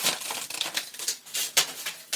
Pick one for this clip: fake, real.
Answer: real